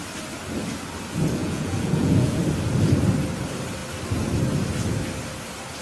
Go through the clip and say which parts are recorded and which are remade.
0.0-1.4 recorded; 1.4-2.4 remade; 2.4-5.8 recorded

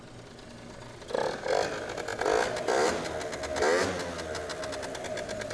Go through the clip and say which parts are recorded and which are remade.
0.0-5.5 recorded

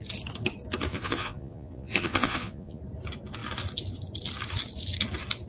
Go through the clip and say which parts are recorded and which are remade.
0.0-0.9 recorded; 0.9-2.8 remade; 2.8-5.5 recorded

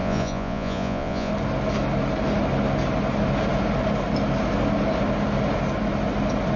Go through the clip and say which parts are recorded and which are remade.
0.0-1.3 remade; 1.3-6.6 recorded

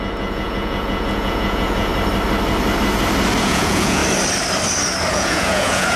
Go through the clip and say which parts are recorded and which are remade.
0.0-1.9 remade; 1.9-3.4 recorded; 3.4-4.0 remade; 4.0-5.1 recorded; 5.1-6.0 remade

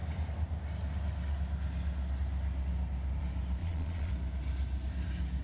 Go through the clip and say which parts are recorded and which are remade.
0.0-3.6 recorded; 3.6-4.1 remade; 4.1-5.4 recorded

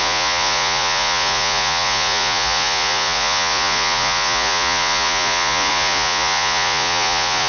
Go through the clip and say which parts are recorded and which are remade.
0.0-7.5 remade

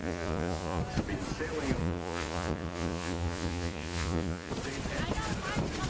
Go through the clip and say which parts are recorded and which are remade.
0.0-0.8 remade; 0.8-1.8 recorded; 1.8-4.5 remade; 4.5-5.9 recorded